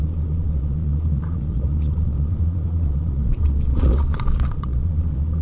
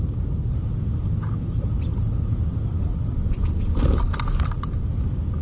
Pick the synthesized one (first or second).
first